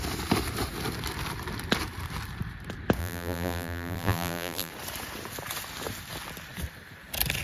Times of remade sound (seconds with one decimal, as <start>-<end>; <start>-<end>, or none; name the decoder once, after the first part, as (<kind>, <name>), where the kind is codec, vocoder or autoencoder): 3.0-4.7 (vocoder, BigVGAN v2)